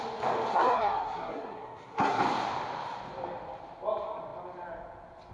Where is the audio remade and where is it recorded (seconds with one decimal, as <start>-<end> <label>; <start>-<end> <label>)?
0.0-0.5 recorded; 0.5-2.2 remade; 2.2-5.3 recorded